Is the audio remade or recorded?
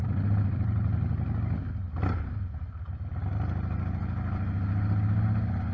recorded